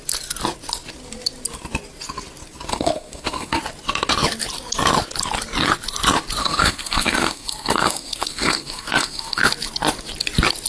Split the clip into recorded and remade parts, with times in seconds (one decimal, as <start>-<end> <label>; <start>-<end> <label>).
0.0-2.7 recorded; 2.7-3.6 remade; 3.6-6.4 recorded; 6.4-9.4 remade; 9.4-10.7 recorded